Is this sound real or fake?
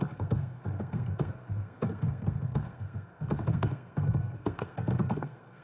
fake